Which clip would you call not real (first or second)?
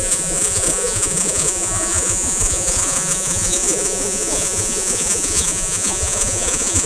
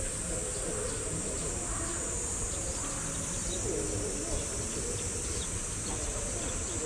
first